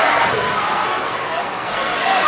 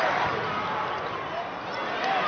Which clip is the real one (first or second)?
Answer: second